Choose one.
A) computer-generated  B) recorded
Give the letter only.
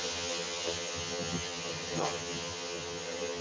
A